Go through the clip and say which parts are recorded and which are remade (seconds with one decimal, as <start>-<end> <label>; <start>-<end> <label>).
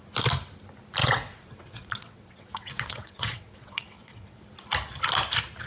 0.0-1.0 recorded; 1.0-4.4 remade; 4.4-5.7 recorded